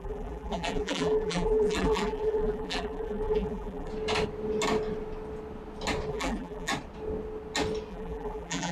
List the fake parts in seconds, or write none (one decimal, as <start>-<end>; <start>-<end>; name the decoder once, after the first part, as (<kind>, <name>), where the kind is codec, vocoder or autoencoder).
0.0-3.9 (vocoder, BigVGAN v2); 6.1-6.7; 7.9-8.7